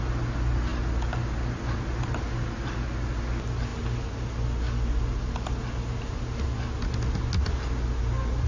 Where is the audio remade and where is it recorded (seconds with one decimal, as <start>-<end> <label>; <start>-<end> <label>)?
0.0-8.5 recorded